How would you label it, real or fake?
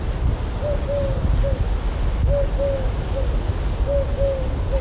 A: real